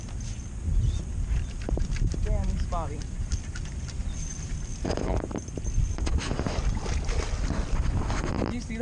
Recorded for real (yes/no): yes